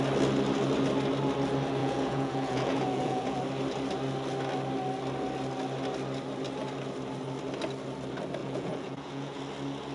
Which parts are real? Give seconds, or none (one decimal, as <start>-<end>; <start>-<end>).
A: 0.0-1.8; 3.4-8.4; 9.4-9.9